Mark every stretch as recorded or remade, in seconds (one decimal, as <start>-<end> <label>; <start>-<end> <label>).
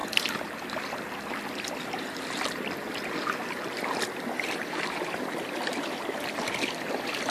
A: 0.0-7.3 recorded